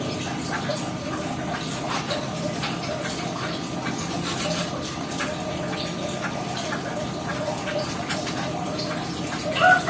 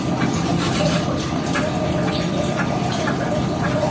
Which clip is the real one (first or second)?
first